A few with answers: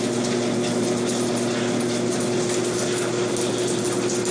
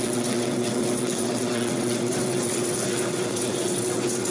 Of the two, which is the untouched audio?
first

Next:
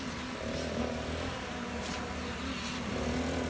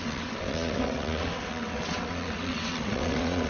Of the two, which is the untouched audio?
first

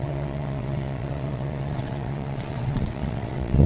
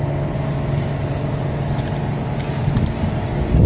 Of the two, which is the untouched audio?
second